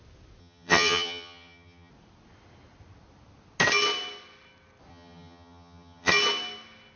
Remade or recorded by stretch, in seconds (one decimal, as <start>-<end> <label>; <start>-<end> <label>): 0.0-0.4 recorded; 0.4-1.9 remade; 1.9-4.9 recorded; 4.9-6.1 remade; 6.1-7.0 recorded